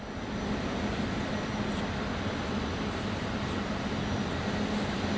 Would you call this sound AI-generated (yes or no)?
no